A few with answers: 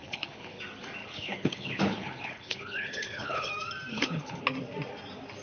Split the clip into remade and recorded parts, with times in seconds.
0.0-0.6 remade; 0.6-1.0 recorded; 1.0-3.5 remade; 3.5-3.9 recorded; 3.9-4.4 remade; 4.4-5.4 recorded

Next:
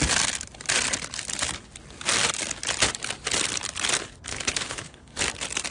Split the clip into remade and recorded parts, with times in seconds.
0.0-4.3 recorded; 4.3-5.2 remade; 5.2-5.7 recorded